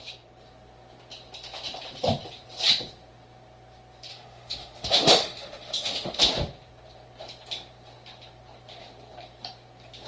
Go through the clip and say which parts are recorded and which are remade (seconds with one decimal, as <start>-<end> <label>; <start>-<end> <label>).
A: 0.0-4.1 recorded; 4.1-6.2 remade; 6.2-10.1 recorded